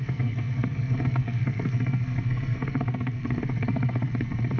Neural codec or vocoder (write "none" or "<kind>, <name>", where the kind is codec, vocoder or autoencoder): codec, SNAC